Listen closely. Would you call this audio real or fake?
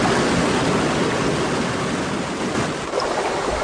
real